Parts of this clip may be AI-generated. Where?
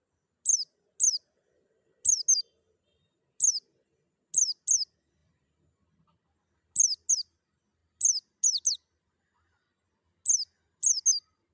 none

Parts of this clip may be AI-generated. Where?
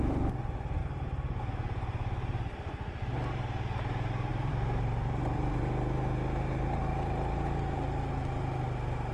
0.8-1.4 (vocoder, BigVGAN v2); 4.3-5.6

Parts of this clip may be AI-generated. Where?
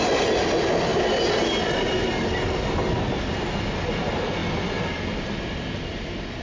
none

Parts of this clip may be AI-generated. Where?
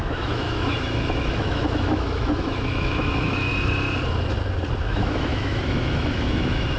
0.0-3.5 (autoencoder, DAC-VAE); 4.8-6.8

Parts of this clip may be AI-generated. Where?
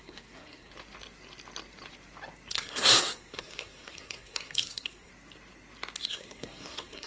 0.0-0.7 (codec, SNAC); 2.5-5.1; 6.0-7.1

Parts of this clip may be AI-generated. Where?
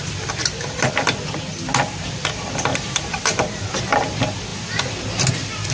2.7-3.8 (vocoder, BigVGAN v2)